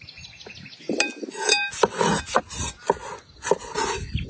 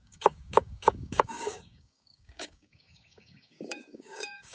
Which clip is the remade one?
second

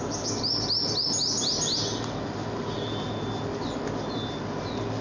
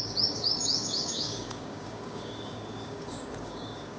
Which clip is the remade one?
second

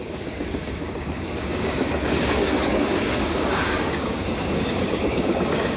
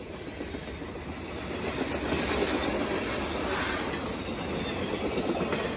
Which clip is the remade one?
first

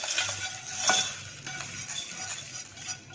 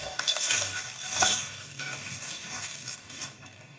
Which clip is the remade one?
second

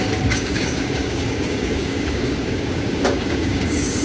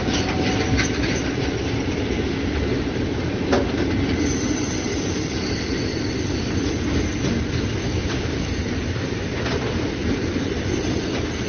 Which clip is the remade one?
first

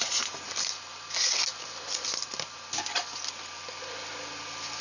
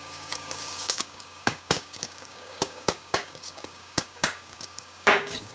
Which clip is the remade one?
second